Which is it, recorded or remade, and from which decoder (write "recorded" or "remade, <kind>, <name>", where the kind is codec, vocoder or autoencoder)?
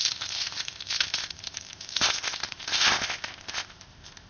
remade, codec, ZipCodec